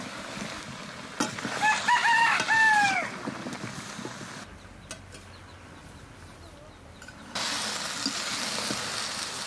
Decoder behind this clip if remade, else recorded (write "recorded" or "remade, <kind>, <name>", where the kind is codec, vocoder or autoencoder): recorded